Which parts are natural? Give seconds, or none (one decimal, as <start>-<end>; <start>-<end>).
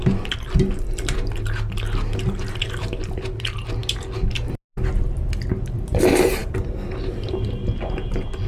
0.0-8.5